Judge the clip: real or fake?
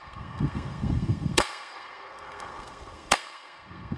fake